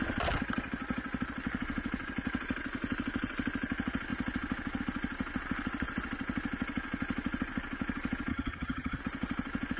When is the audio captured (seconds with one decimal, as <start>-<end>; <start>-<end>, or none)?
0.0-8.3; 9.0-9.8